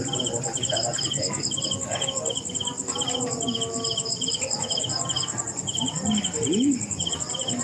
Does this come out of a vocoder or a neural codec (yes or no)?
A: no